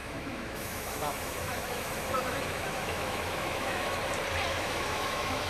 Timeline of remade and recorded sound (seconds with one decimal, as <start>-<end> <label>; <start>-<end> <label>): 0.0-4.0 remade; 4.0-4.5 recorded; 4.5-5.5 remade